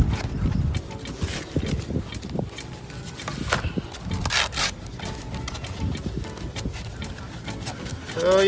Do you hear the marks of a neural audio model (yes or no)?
no